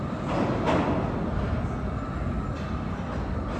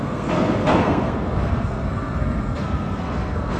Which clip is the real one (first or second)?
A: first